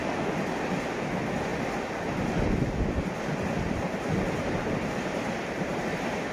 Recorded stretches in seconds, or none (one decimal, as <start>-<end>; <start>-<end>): 0.0-4.4; 5.8-6.3